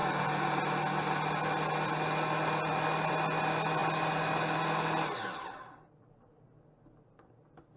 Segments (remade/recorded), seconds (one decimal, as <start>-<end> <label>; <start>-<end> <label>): 0.0-7.8 recorded